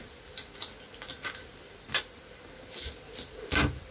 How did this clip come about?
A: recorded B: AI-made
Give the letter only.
A